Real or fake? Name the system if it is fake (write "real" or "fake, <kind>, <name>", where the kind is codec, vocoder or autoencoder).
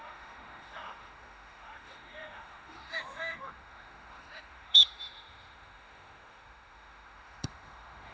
fake, autoencoder, DAC-VAE